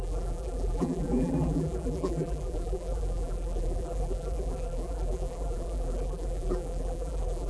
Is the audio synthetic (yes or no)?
yes